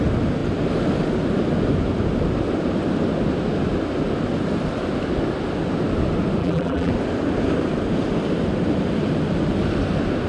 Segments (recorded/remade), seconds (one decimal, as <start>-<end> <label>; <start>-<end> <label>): 0.0-6.4 recorded; 6.4-6.9 remade; 6.9-10.3 recorded